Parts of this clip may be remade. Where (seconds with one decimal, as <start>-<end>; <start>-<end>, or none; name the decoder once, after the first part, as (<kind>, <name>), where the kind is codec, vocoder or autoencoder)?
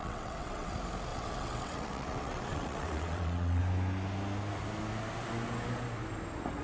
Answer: 0.0-0.7 (vocoder, WaveNeXt); 1.1-3.6